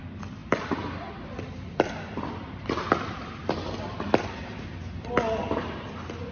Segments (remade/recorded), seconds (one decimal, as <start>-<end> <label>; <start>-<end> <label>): 0.0-0.4 recorded; 0.4-3.3 remade; 3.3-6.3 recorded